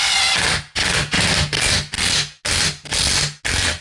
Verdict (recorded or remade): recorded